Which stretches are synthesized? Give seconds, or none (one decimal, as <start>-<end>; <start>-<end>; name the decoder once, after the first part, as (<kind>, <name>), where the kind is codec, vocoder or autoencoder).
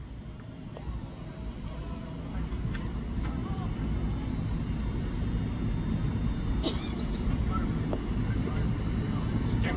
none